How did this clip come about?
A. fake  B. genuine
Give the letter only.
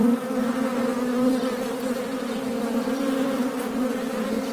A